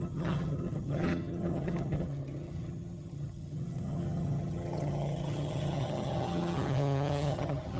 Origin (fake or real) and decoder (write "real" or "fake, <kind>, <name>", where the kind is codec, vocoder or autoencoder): fake, vocoder, HiFi-GAN